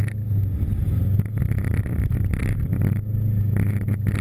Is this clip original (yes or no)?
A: yes